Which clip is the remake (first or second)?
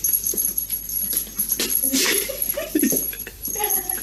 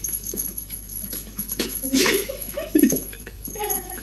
second